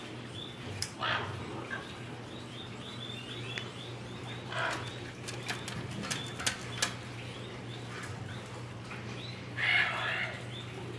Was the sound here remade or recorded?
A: recorded